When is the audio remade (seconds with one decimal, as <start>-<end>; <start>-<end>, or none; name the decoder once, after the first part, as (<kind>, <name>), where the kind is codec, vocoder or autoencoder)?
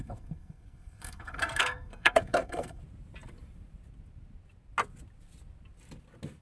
0.0-2.8 (codec, SNAC)